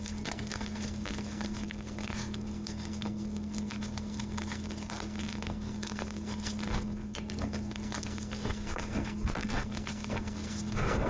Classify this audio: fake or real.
fake